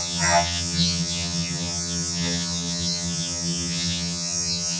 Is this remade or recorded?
remade